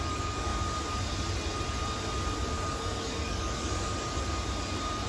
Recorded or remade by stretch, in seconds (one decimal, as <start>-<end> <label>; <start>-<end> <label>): 0.0-0.5 remade; 0.5-2.7 recorded; 2.7-3.9 remade; 3.9-5.1 recorded

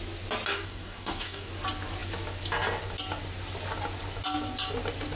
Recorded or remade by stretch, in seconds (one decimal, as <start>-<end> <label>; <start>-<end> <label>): 0.0-0.5 recorded; 0.5-1.5 remade; 1.5-5.2 recorded

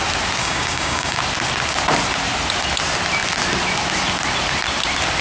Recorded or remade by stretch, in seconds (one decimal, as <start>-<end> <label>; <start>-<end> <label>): 0.0-0.4 recorded; 0.4-1.2 remade; 1.2-5.2 recorded

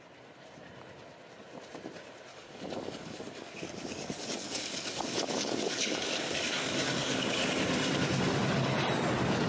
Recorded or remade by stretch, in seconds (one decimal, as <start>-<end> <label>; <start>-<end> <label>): 0.0-2.3 recorded; 2.3-7.5 remade; 7.5-9.5 recorded

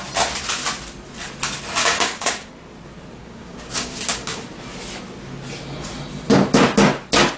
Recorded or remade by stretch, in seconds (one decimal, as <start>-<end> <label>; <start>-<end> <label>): 0.0-1.8 recorded; 1.8-2.5 remade; 2.5-3.2 recorded; 3.2-4.4 remade; 4.4-7.4 recorded

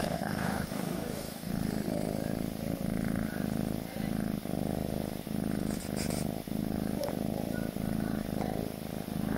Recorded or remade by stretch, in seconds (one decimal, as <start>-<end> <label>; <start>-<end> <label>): 0.0-1.5 remade; 1.5-9.4 recorded

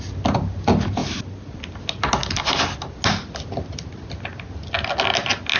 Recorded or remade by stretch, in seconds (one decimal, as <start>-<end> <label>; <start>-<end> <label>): 0.0-5.6 recorded

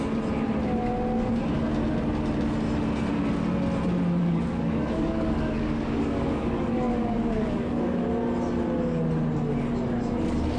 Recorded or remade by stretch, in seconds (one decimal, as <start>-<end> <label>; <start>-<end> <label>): 0.0-4.2 recorded; 4.2-8.0 remade; 8.0-10.6 recorded